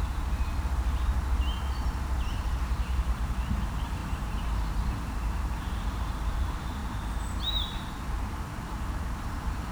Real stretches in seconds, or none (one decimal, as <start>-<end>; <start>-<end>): 0.5-2.7; 6.8-9.2